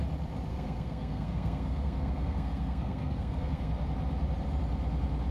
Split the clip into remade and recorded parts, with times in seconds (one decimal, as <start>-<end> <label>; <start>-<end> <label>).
0.0-0.5 recorded; 0.5-3.7 remade; 3.7-5.3 recorded